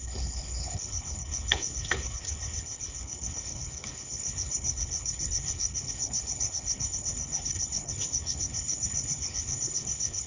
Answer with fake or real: fake